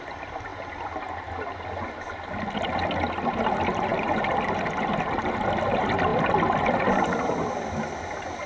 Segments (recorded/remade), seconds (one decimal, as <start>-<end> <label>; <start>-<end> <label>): 0.0-3.9 recorded; 3.9-4.5 remade; 4.5-8.5 recorded